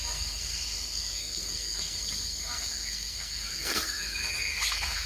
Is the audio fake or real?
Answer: fake